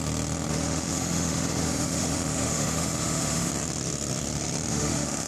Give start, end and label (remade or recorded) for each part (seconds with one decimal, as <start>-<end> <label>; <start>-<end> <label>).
0.0-0.5 recorded; 0.5-3.5 remade; 3.5-4.7 recorded; 4.7-5.3 remade

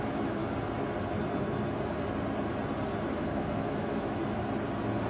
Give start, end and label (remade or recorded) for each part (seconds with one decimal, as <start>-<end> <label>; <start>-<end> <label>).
0.0-0.4 remade; 0.4-3.2 recorded; 3.2-4.2 remade; 4.2-5.1 recorded

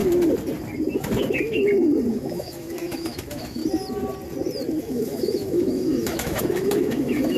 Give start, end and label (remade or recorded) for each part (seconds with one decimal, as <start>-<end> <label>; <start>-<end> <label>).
0.0-2.1 recorded; 2.1-3.6 remade; 3.6-4.8 recorded; 4.8-7.4 remade

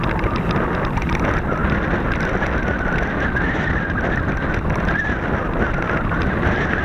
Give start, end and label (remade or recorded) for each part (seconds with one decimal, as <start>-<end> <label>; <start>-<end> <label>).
0.0-6.8 recorded